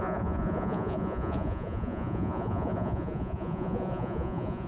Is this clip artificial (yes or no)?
yes